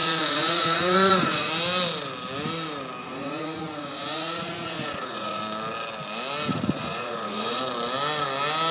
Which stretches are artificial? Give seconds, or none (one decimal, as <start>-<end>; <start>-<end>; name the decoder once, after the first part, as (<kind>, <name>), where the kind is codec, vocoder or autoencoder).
0.0-1.5 (vocoder, Vocos); 3.0-5.4; 6.5-7.6